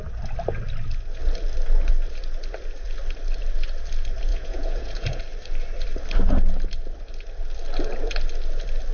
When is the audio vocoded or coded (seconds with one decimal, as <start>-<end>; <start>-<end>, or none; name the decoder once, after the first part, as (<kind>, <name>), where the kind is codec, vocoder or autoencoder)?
4.3-5.2 (vocoder, Vocos)